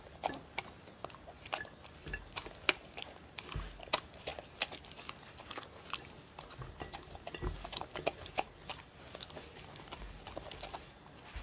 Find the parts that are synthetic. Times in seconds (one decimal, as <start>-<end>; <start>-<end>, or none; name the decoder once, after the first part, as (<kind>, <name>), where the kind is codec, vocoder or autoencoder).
none